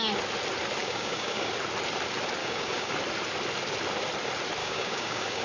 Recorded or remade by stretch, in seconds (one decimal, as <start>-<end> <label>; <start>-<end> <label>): 0.0-0.8 recorded; 0.8-1.5 remade; 1.5-2.4 recorded; 2.4-2.9 remade; 2.9-4.6 recorded; 4.6-5.4 remade